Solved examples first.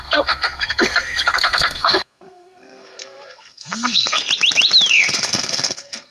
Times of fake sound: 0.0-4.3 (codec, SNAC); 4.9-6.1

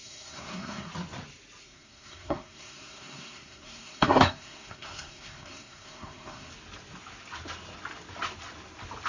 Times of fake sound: 0.0-0.9 (codec, SNAC); 1.6-6.5

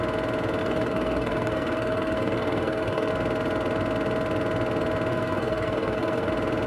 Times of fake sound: 0.6-3.1 (codec, SNAC); 5.1-6.3